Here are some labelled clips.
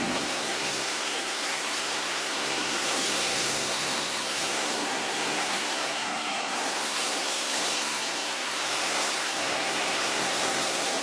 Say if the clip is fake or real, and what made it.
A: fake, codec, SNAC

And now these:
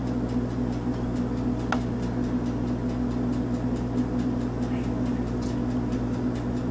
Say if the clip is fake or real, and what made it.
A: real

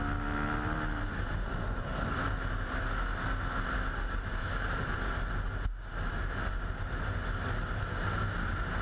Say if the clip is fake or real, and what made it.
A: real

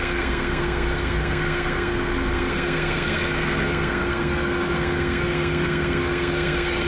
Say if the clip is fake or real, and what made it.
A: fake, codec, SNAC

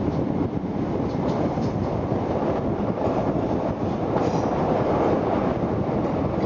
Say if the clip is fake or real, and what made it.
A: fake, vocoder, BigVGAN v2